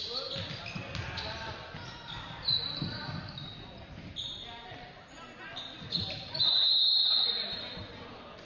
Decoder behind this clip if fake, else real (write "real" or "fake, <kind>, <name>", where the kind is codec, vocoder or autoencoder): real